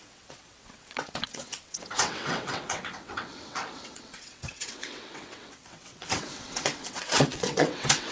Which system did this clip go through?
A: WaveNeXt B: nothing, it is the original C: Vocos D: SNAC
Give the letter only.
A